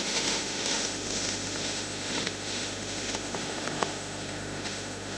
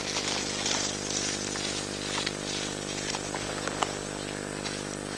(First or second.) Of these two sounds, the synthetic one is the first